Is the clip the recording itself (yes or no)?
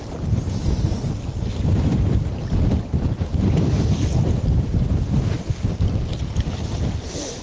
no